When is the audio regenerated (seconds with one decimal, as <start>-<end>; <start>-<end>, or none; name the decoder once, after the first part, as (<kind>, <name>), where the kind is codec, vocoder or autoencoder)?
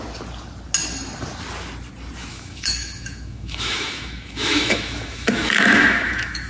2.3-6.5 (autoencoder, DAC-VAE)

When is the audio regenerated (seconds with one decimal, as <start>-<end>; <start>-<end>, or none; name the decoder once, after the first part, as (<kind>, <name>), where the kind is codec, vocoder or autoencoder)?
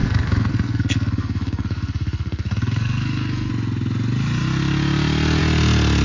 0.0-3.5 (codec, SNAC)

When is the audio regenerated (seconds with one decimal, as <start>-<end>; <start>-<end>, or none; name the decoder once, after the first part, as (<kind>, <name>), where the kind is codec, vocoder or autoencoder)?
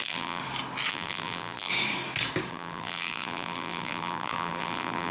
0.0-0.4 (vocoder, BigVGAN v2); 0.9-1.7; 2.5-5.1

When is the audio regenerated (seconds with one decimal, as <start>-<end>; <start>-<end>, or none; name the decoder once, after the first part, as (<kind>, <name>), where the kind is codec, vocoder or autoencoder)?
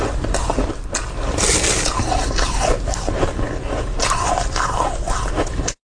none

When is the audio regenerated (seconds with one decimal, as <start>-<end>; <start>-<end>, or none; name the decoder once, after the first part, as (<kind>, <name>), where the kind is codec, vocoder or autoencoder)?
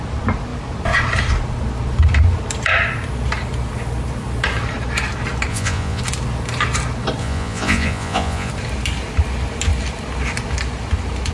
5.5-6.0 (vocoder, Vocos); 7.2-8.5